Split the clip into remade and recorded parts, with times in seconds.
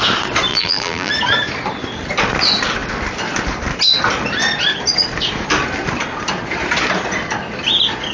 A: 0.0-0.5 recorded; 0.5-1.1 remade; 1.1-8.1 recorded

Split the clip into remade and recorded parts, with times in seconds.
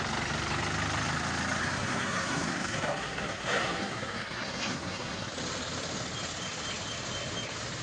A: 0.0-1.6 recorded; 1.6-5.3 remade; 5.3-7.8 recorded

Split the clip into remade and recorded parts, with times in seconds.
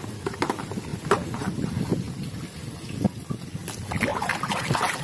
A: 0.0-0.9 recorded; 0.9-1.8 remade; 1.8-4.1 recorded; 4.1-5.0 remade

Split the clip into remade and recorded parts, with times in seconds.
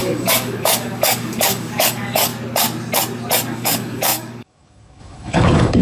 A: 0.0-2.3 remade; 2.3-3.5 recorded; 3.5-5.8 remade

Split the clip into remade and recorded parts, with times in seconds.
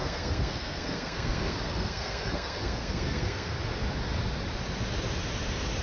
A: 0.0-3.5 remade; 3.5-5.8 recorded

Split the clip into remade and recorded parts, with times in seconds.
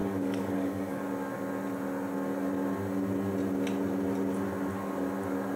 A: 0.0-1.0 remade; 1.0-5.6 recorded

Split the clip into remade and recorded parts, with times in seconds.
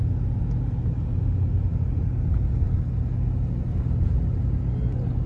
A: 0.0-5.3 recorded